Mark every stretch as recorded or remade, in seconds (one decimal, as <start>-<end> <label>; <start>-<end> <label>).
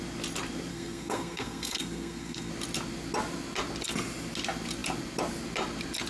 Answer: 0.0-0.7 recorded; 0.7-2.5 remade; 2.5-6.1 recorded